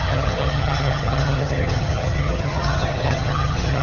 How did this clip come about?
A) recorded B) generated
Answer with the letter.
B